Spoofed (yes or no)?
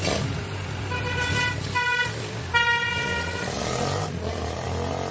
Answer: no